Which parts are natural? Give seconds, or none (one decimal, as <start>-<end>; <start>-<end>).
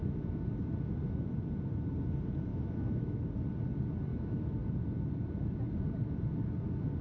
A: 0.0-2.5; 3.2-4.1; 4.7-7.0